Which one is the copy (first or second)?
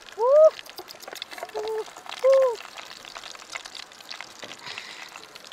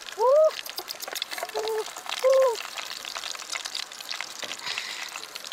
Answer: second